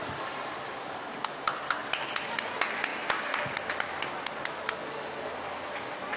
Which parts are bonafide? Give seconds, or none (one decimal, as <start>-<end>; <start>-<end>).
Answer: 0.0-6.2